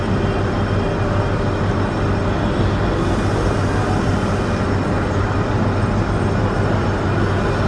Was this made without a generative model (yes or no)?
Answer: yes